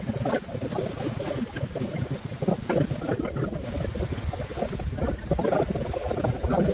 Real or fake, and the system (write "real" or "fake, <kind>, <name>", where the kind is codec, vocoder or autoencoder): real